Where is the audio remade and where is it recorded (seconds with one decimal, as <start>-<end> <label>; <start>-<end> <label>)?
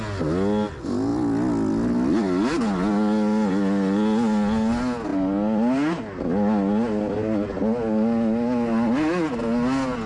0.0-10.1 recorded